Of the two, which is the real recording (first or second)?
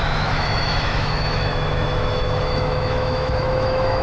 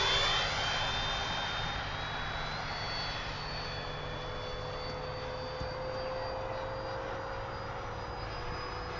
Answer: second